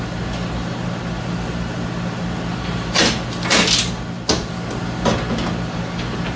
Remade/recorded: recorded